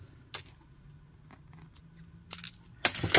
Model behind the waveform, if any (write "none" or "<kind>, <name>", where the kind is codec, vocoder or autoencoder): none